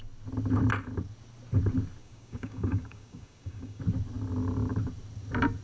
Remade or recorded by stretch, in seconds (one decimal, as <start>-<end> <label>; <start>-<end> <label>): 0.0-2.0 recorded; 2.0-3.8 remade; 3.8-5.6 recorded